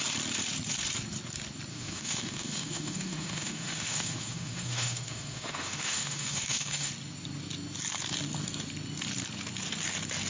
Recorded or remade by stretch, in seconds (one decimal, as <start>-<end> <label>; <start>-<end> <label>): 0.0-1.7 recorded; 1.7-6.9 remade; 6.9-10.3 recorded